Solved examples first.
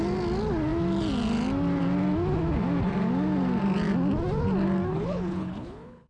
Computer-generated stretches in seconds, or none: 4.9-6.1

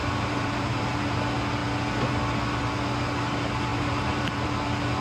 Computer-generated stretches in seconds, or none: 0.0-1.0; 3.7-4.5